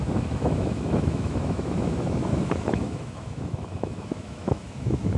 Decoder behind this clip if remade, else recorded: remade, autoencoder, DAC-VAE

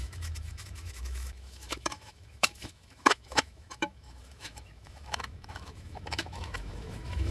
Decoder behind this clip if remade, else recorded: remade, autoencoder, DAC-VAE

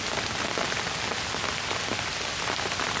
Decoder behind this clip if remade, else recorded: recorded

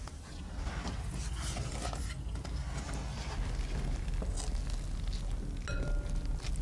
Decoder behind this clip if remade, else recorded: recorded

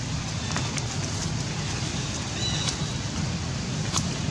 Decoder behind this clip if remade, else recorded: recorded